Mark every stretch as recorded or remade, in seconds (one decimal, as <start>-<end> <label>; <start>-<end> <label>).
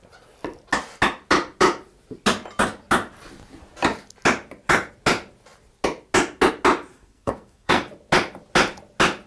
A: 0.0-6.9 recorded; 6.9-7.9 remade; 7.9-9.3 recorded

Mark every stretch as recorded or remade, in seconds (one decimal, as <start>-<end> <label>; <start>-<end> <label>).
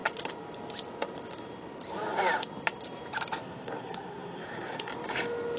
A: 0.0-3.4 recorded; 3.4-4.9 remade; 4.9-5.6 recorded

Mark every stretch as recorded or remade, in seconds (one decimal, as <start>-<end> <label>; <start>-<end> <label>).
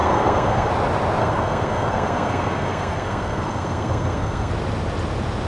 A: 0.0-0.7 remade; 0.7-1.2 recorded; 1.2-4.5 remade; 4.5-5.5 recorded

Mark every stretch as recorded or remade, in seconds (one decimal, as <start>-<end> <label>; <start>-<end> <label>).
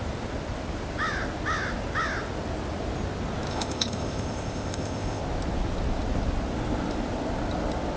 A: 0.0-3.5 recorded; 3.5-5.2 remade; 5.2-8.0 recorded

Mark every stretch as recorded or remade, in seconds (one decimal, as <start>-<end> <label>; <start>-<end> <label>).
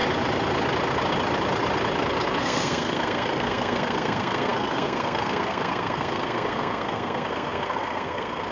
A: 0.0-2.4 recorded; 2.4-8.5 remade